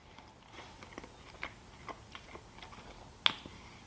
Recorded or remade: recorded